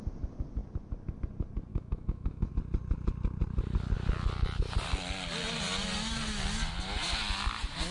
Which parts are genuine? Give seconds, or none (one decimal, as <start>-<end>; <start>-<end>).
0.0-1.7; 2.5-7.9